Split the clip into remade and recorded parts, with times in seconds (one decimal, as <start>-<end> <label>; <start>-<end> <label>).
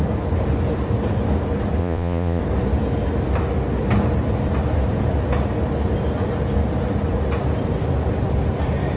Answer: 0.0-1.8 recorded; 1.8-2.4 remade; 2.4-9.0 recorded